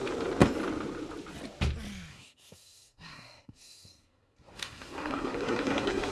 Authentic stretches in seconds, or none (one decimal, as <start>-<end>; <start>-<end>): 0.0-2.1